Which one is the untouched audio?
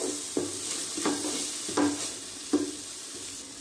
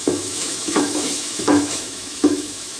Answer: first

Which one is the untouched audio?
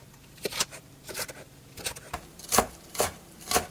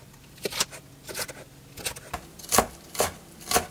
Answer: second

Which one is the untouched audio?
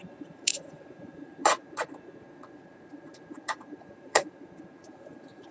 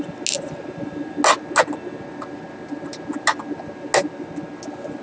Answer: second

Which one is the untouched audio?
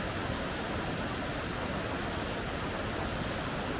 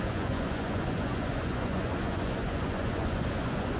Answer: first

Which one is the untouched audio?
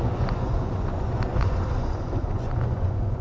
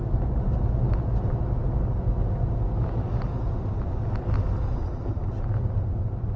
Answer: second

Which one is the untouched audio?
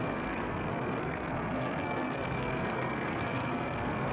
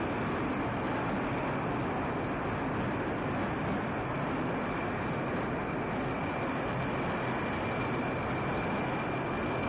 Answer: second